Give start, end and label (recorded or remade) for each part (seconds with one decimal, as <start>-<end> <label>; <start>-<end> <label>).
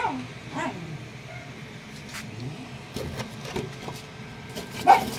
0.0-5.2 recorded